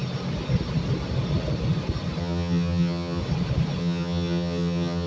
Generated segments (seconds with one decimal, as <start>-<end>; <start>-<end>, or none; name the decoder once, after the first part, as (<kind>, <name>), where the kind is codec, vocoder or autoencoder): 2.2-3.2 (vocoder, HiFi-GAN); 3.8-5.1